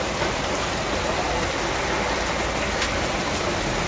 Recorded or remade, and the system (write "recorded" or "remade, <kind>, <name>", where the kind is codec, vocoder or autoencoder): recorded